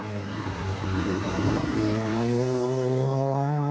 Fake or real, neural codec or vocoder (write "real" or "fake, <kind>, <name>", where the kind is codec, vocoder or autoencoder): fake, codec, SNAC